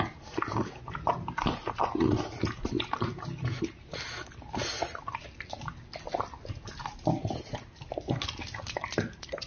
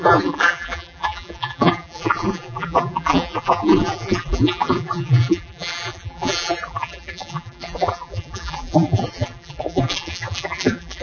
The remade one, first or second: second